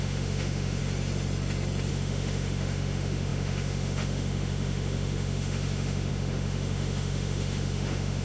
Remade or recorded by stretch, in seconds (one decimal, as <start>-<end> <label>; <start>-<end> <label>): 0.0-0.8 remade; 0.8-1.9 recorded; 1.9-8.2 remade